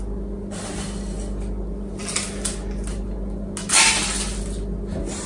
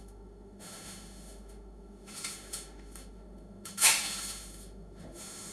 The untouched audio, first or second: first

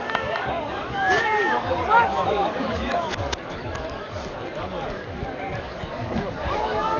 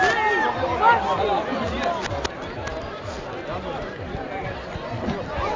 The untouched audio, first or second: second